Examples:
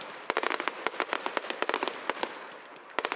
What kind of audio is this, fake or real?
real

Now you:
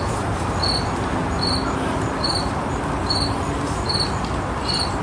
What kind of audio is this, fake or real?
real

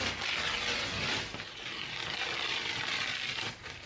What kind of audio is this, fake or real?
real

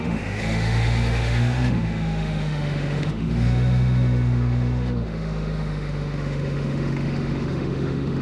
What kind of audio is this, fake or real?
fake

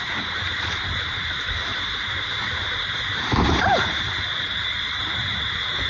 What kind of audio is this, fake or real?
fake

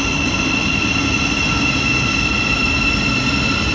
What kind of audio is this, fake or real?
real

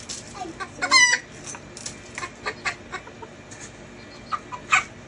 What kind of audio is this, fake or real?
real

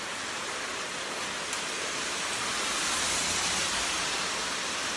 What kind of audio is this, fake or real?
real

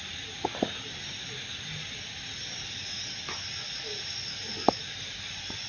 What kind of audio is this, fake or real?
real